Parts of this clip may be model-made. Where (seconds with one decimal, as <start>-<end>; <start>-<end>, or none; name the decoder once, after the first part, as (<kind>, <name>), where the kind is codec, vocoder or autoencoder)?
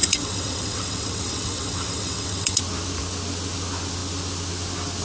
0.0-2.6 (vocoder, WaveNeXt)